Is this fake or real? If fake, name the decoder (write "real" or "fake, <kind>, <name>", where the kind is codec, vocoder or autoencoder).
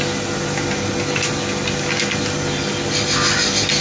real